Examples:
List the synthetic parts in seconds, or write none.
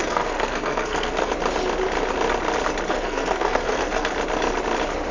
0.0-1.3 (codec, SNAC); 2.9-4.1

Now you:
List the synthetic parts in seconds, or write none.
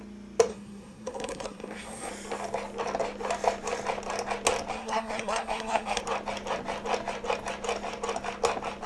0.5-2.1 (codec, SNAC); 4.7-6.0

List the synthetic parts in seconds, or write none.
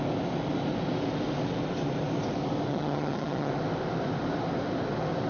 2.7-3.5 (vocoder, HiFi-GAN)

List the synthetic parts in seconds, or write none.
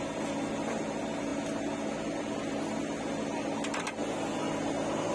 none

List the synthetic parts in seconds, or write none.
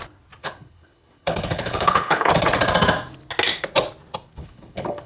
0.4-2.3 (codec, HILCodec); 4.4-5.1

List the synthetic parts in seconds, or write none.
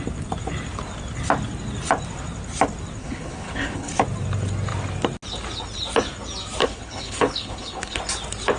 3.0-3.9 (codec, HILCodec); 6.6-8.0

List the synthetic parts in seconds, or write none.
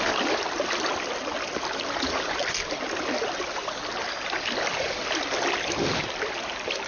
none